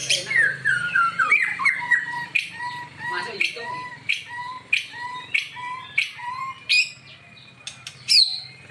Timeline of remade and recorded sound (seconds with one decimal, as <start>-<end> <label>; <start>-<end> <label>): 0.0-4.1 remade; 4.1-6.2 recorded; 6.2-6.8 remade; 6.8-8.7 recorded